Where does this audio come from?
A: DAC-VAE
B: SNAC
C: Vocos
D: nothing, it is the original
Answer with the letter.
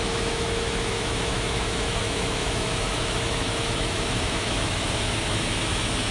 A